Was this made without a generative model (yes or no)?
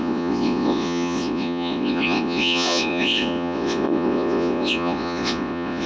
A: no